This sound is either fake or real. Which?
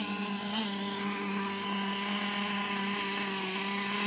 real